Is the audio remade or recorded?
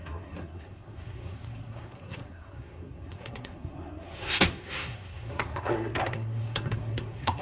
remade